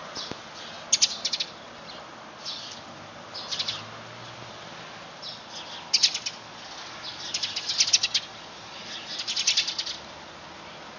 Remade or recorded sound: recorded